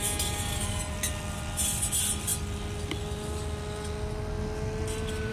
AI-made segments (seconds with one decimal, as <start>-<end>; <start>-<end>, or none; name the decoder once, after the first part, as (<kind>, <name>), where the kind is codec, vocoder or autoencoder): none